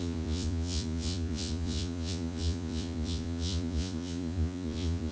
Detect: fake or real fake